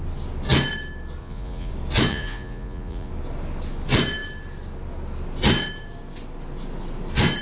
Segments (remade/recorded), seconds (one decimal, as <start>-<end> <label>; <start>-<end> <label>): 0.0-1.2 recorded; 1.2-1.7 remade; 1.7-2.1 recorded; 2.1-3.1 remade; 3.1-7.4 recorded